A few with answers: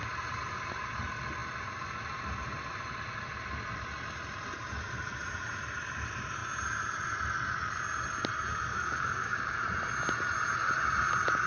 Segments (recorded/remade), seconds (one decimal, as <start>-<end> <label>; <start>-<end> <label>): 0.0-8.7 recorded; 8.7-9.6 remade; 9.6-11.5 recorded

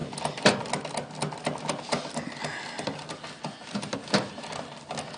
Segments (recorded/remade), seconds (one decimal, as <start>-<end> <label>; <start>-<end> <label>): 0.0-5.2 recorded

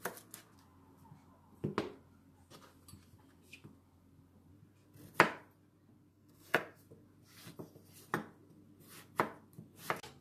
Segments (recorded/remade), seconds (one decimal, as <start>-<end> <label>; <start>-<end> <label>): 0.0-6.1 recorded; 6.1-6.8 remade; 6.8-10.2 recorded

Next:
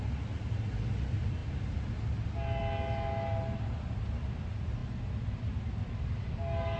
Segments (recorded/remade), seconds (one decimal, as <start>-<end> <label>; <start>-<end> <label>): 0.0-6.8 recorded

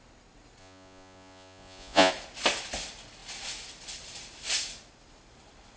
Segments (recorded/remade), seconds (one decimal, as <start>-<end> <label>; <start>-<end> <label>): 0.0-0.6 recorded; 0.6-2.1 remade; 2.1-5.8 recorded